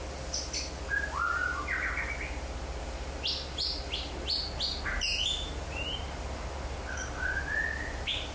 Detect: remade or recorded recorded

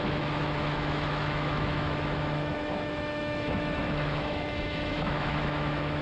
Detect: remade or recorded remade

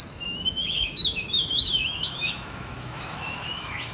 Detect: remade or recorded remade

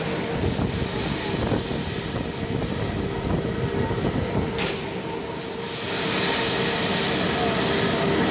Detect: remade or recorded recorded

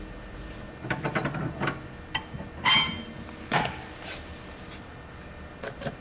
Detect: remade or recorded recorded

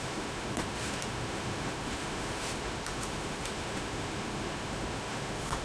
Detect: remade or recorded remade